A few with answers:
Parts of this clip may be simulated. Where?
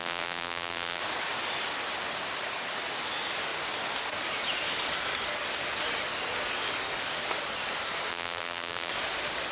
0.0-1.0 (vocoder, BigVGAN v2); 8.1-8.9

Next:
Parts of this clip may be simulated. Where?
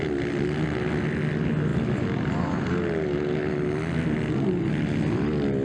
none